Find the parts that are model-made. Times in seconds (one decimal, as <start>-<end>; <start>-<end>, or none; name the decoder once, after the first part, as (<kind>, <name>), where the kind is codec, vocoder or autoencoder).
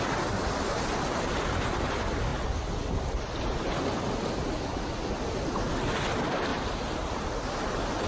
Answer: 6.5-7.4 (vocoder, BigVGAN v2)